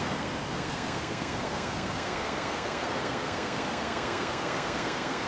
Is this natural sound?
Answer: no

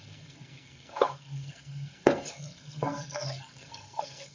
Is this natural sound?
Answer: no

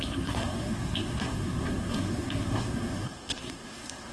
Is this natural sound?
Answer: no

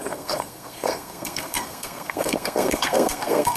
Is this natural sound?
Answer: no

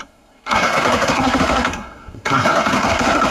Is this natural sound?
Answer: no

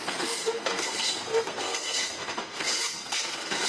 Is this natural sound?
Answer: no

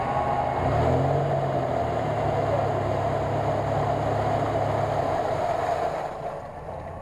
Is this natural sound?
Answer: yes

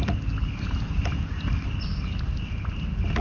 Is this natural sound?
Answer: yes